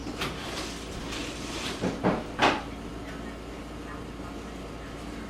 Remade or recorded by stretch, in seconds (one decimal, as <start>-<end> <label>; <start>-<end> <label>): 0.0-0.6 remade; 0.6-1.2 recorded; 1.2-2.5 remade; 2.5-5.3 recorded